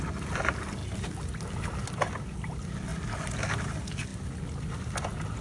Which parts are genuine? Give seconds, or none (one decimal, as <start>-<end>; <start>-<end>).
0.0-5.4